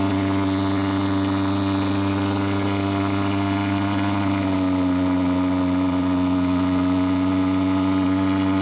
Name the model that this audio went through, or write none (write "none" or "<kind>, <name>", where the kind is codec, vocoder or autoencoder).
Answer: none